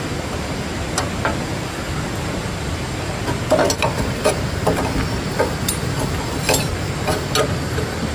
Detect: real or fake real